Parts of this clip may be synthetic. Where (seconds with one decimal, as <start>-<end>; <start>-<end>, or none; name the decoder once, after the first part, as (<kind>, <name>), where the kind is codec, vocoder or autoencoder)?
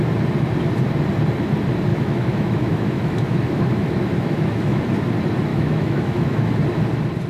1.9-4.8 (autoencoder, DAC-VAE); 5.5-6.5